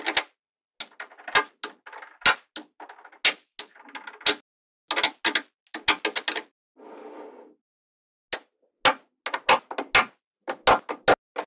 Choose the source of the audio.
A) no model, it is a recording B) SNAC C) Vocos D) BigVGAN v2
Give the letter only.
A